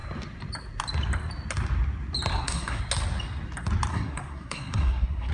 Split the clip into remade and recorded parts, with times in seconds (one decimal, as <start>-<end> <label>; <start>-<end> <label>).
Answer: 0.0-2.3 recorded; 2.3-2.8 remade; 2.8-3.9 recorded; 3.9-5.3 remade